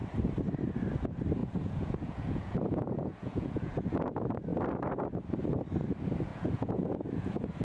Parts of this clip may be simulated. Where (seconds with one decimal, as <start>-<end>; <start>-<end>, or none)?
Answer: 1.4-3.9; 6.3-7.6